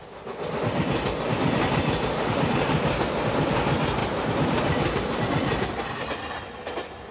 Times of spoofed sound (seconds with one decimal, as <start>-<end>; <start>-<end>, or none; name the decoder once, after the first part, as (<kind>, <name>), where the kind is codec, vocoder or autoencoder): none